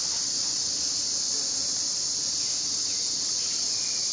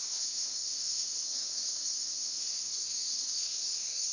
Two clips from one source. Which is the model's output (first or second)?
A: second